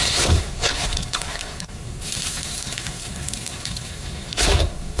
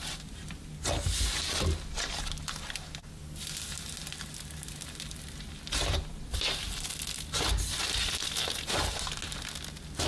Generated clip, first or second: first